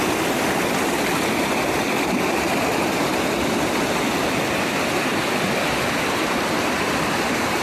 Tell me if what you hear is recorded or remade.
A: remade